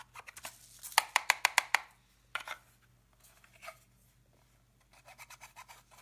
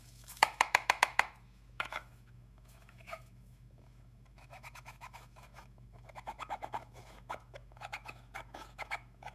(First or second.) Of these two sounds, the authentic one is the first